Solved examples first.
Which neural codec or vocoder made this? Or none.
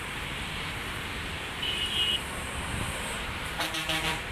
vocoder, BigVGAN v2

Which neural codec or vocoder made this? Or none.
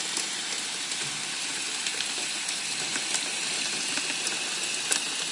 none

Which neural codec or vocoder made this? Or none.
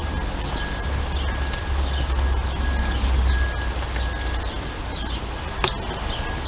none